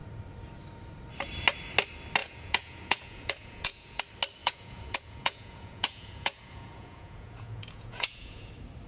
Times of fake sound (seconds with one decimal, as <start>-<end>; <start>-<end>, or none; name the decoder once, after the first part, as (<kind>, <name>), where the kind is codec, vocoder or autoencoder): 2.2-4.0 (vocoder, Vocos); 4.4-8.5